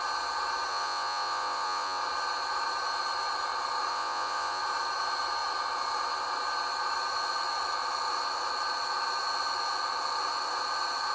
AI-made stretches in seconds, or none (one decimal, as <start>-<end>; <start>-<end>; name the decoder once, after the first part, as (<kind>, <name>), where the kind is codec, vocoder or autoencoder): 0.7-2.0 (vocoder, Vocos); 3.9-4.6